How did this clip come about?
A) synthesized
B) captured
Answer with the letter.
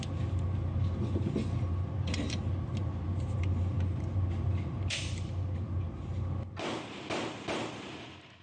B